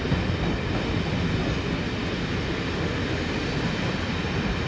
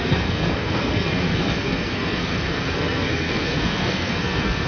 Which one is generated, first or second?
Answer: second